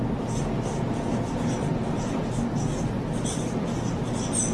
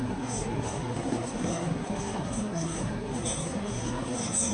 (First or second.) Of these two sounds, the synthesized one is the second